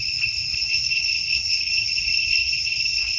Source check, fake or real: fake